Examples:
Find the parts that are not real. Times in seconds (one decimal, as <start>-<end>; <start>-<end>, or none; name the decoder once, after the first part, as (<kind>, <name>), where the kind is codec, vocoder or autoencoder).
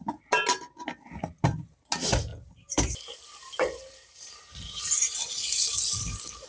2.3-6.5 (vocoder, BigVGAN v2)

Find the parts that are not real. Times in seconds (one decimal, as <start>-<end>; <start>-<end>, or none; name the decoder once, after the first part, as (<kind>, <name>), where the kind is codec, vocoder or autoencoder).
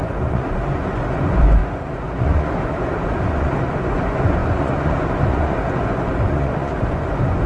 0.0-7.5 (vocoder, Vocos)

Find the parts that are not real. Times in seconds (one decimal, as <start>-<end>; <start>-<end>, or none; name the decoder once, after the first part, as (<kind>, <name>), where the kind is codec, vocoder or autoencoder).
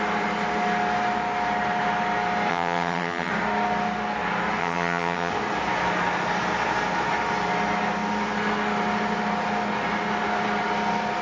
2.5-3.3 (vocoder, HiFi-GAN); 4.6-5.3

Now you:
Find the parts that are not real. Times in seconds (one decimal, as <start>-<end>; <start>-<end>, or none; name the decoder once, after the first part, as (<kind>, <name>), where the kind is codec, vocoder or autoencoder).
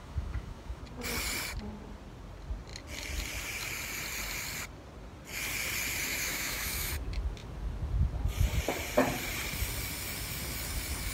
0.0-0.8 (autoencoder, DAC-VAE); 6.1-6.9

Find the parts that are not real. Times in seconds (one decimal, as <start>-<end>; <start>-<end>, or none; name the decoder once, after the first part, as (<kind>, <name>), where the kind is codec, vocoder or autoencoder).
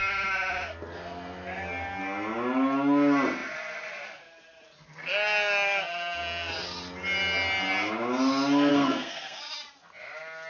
8.7-9.5 (codec, SNAC)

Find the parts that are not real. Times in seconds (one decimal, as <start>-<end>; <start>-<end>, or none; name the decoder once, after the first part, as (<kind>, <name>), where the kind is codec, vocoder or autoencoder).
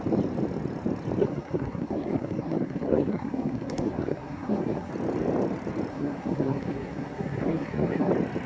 1.2-4.9 (codec, SNAC); 5.9-8.1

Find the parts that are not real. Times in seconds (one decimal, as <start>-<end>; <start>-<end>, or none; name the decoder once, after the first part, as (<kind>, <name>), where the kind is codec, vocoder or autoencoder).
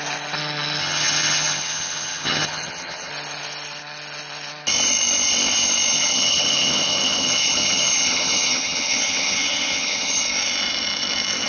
0.8-3.1 (vocoder, HiFi-GAN); 5.9-10.2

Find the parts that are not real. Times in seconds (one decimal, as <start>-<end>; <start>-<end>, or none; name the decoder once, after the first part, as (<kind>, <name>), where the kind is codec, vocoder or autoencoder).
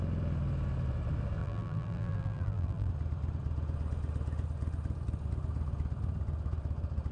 1.4-2.9 (vocoder, BigVGAN v2)